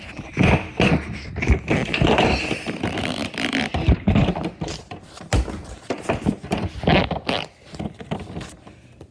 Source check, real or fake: real